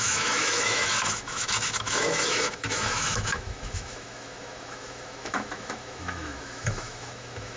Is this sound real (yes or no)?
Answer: no